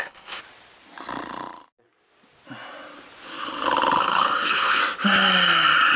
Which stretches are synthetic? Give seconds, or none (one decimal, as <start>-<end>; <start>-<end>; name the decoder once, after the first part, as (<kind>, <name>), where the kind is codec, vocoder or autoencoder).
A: 0.0-0.4 (codec, HILCodec); 4.0-4.8